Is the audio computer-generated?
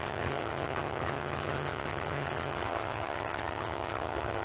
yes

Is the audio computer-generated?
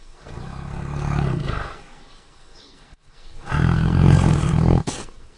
yes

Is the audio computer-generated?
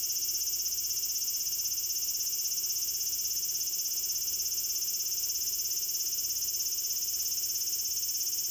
no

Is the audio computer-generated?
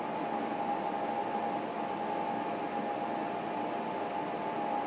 no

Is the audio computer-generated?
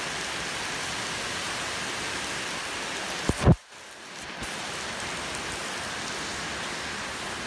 no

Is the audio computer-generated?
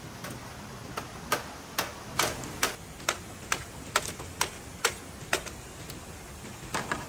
no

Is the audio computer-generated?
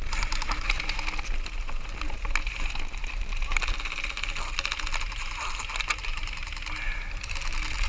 no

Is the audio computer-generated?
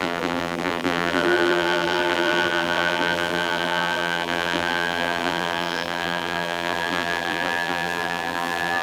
yes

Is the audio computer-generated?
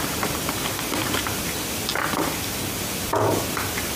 no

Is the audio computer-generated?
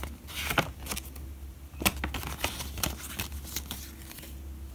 no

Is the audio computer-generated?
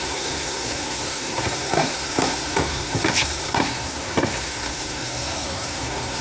yes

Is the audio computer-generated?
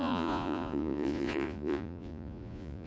yes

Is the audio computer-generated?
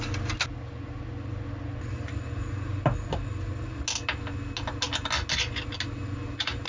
no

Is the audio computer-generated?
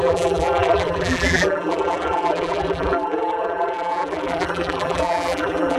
yes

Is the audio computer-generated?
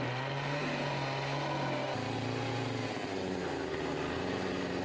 no